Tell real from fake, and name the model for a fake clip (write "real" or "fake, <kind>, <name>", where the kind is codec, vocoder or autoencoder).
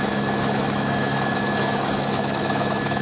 fake, autoencoder, DAC-VAE